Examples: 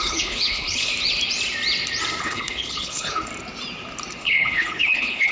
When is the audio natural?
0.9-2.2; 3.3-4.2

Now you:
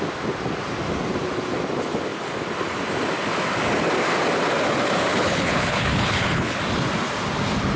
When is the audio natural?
0.0-5.1; 6.6-7.8

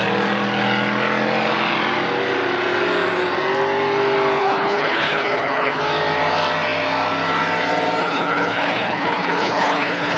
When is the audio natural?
0.0-4.4; 5.8-8.0